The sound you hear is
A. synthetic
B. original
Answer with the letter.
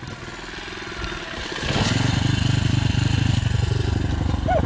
B